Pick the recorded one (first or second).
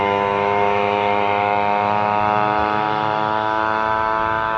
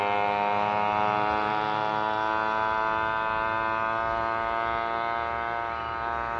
second